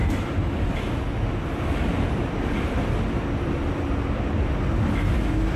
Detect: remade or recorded recorded